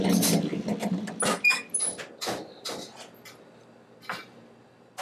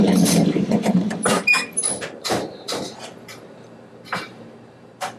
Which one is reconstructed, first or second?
second